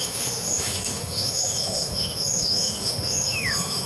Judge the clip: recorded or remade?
remade